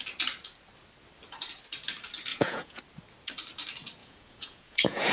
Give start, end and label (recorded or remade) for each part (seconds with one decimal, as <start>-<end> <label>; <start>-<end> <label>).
0.0-2.3 recorded; 2.3-2.8 remade; 2.8-4.0 recorded; 4.0-5.1 remade